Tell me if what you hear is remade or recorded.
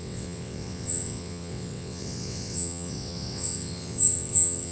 remade